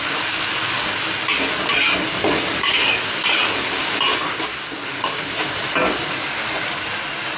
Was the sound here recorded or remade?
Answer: recorded